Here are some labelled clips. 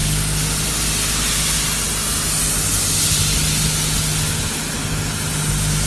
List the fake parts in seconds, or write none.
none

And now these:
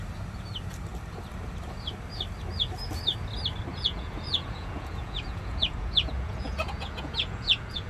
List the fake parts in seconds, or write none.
3.7-7.9 (vocoder, Vocos)

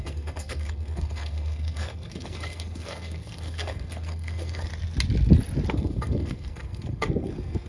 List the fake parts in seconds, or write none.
0.0-4.7 (codec, SNAC); 5.7-7.7

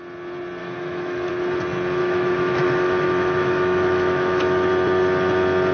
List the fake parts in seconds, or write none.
0.6-1.3 (autoencoder, DAC-VAE); 2.0-4.7

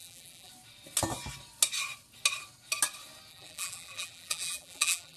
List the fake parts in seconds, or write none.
0.0-0.5 (vocoder, BigVGAN v2); 3.3-5.2